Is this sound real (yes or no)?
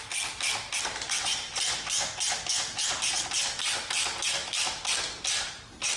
yes